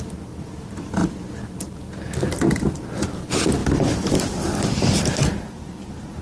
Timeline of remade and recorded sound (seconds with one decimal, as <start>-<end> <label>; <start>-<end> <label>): 0.0-6.2 recorded